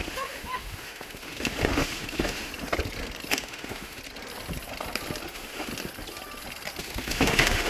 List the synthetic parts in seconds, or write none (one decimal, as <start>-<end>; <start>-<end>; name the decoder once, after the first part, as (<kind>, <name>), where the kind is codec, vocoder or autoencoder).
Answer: 0.0-2.5 (autoencoder, DAC-VAE); 3.3-4.0; 5.3-5.7; 6.8-7.7